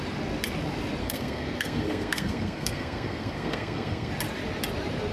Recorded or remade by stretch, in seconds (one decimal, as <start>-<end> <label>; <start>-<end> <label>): 0.0-1.0 recorded; 1.0-4.1 remade; 4.1-5.1 recorded